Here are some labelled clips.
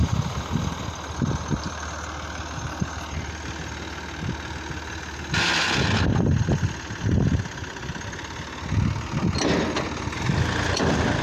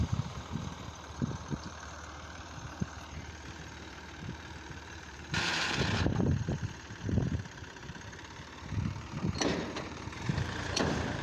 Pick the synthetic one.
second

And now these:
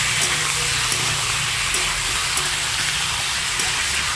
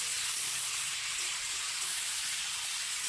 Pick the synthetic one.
second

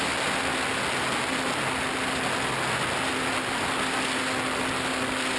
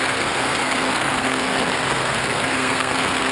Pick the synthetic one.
second